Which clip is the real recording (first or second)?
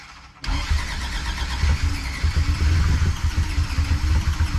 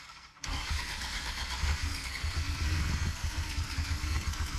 first